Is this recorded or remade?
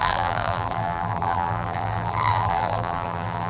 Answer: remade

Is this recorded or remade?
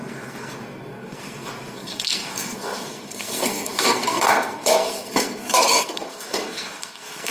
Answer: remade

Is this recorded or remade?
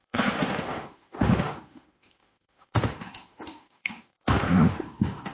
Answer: remade